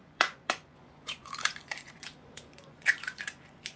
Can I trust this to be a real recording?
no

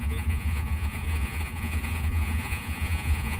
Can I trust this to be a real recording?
no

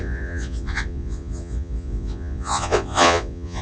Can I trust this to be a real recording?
no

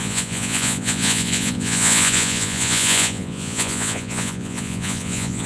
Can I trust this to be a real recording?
no